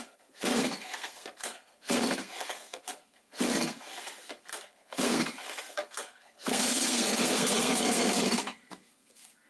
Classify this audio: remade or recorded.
remade